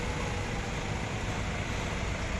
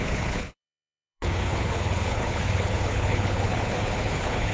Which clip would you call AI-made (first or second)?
second